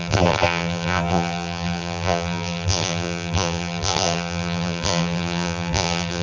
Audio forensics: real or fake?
fake